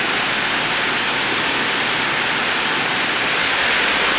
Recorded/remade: recorded